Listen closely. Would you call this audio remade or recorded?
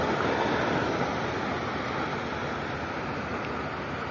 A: recorded